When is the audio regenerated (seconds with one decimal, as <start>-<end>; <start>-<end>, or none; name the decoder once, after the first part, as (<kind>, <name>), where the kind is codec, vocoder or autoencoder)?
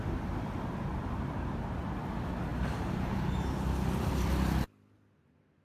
2.5-4.1 (vocoder, BigVGAN v2)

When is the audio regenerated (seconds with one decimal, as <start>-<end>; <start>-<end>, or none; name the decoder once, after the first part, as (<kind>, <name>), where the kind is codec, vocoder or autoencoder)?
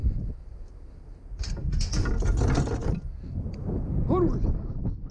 none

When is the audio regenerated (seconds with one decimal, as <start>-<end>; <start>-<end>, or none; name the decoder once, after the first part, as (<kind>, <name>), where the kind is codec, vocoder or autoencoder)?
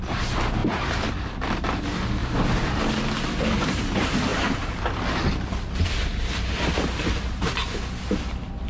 0.6-1.1 (vocoder, BigVGAN v2); 2.2-2.9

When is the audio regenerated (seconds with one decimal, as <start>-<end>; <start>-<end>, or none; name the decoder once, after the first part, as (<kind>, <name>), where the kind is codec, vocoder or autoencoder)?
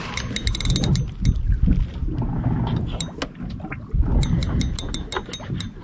none